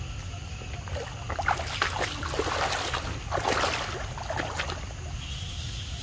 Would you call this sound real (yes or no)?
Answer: yes